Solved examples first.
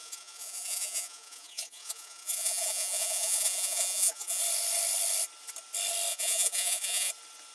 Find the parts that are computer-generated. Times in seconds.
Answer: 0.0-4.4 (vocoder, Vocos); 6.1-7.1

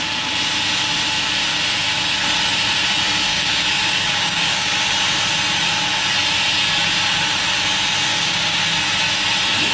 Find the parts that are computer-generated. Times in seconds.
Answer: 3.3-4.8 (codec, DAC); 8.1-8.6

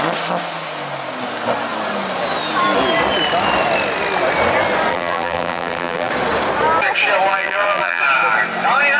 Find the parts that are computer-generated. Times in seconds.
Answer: 4.9-6.1 (vocoder, BigVGAN v2); 7.3-8.0

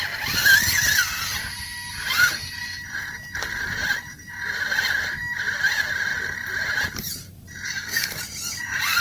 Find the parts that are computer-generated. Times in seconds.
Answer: 3.8-4.4 (vocoder, BigVGAN v2)